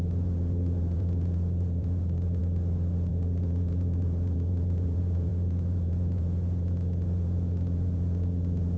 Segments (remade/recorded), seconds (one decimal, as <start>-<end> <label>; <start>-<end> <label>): 0.0-2.4 remade; 2.4-3.1 recorded; 3.1-8.8 remade